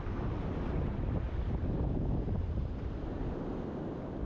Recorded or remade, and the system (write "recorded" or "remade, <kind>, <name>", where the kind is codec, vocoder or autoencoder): recorded